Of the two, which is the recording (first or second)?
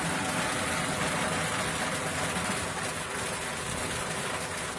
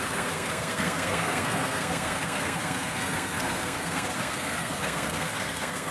first